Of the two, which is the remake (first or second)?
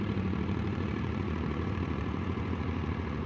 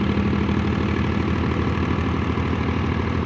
first